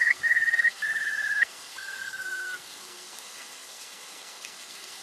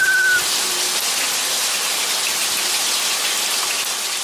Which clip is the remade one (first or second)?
first